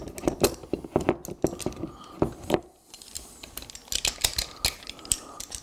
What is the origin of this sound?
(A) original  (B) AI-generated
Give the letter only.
A